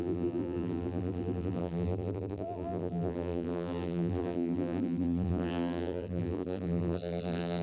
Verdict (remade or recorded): remade